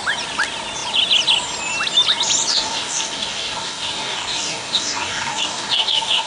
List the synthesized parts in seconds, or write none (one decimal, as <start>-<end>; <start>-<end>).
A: 2.5-6.3